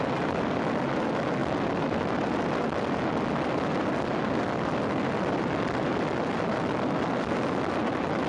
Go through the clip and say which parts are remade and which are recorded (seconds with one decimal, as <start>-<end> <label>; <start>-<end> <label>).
0.0-8.3 recorded